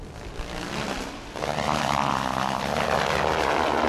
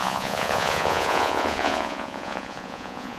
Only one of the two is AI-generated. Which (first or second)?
second